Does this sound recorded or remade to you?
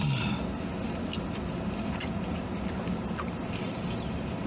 recorded